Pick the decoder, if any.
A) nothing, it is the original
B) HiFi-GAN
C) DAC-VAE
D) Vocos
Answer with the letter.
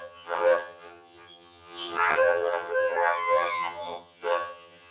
B